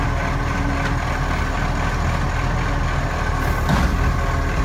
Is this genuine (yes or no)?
yes